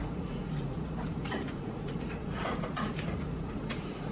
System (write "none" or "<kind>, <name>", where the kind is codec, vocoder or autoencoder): vocoder, Vocos